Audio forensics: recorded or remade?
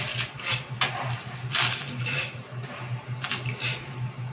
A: recorded